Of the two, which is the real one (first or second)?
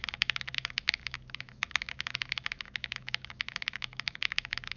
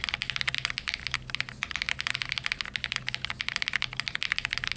second